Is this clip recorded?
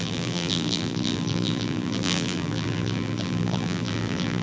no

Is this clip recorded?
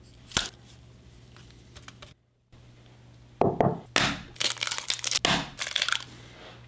yes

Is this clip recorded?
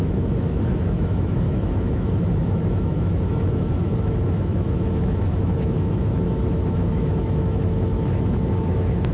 no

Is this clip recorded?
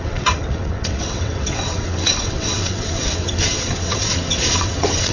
no